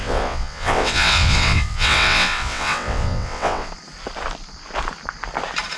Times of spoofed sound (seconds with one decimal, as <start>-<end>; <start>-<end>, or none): 0.0-3.7